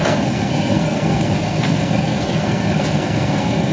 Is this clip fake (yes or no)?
yes